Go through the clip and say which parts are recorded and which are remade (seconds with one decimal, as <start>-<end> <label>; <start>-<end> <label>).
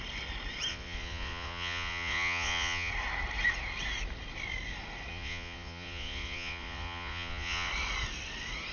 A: 0.0-0.7 recorded; 0.7-2.9 remade; 2.9-5.1 recorded; 5.1-7.7 remade; 7.7-8.7 recorded